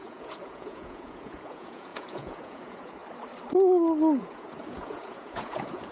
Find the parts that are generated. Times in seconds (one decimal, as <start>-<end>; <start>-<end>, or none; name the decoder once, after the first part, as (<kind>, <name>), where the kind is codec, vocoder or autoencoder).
0.0-3.0 (vocoder, Vocos); 4.2-5.9